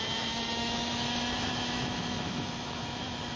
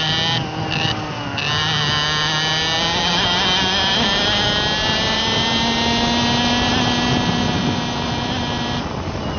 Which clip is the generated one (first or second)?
first